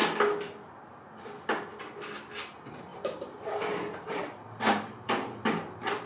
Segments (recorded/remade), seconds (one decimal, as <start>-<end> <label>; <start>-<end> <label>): 0.0-2.9 recorded; 2.9-6.1 remade